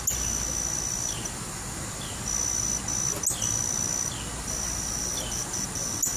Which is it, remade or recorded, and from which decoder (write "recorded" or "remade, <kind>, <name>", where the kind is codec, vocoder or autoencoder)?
recorded